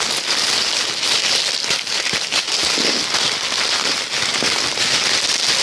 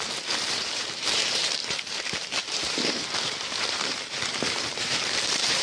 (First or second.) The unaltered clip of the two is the first